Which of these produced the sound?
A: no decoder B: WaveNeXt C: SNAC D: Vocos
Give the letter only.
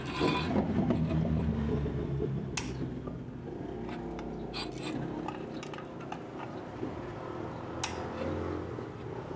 A